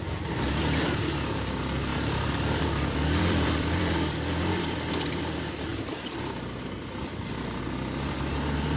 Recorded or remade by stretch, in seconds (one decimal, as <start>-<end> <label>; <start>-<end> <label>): 0.0-1.9 recorded; 1.9-5.2 remade; 5.2-8.8 recorded